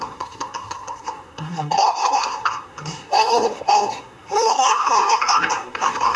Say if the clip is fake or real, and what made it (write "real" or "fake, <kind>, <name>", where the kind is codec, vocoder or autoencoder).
fake, codec, SNAC